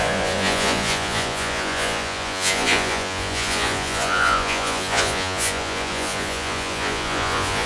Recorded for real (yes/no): no